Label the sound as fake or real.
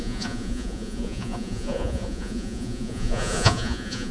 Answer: fake